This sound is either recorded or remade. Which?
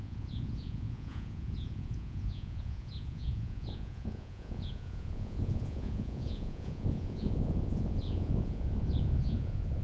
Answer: remade